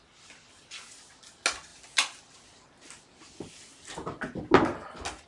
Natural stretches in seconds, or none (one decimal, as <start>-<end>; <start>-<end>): 0.0-5.3